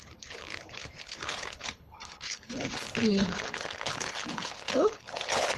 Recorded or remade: remade